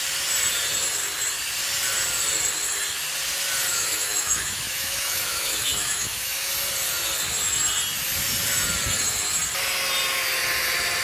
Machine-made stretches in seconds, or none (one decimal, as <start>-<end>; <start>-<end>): 3.7-6.5